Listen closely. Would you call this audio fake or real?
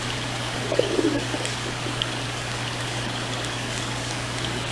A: fake